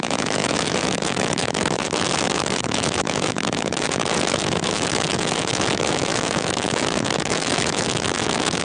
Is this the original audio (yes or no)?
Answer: no